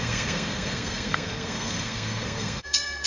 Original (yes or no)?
no